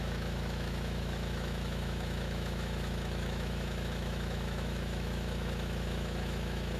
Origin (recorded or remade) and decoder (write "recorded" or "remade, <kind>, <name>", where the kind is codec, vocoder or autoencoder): remade, autoencoder, DAC-VAE